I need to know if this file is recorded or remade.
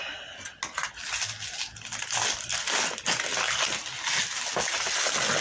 recorded